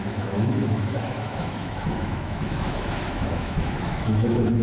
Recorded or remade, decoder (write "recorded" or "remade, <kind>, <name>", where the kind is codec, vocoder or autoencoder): remade, autoencoder, DAC-VAE